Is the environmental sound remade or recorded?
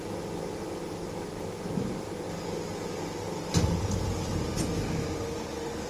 recorded